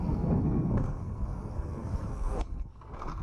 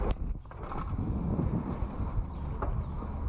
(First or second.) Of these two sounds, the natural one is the second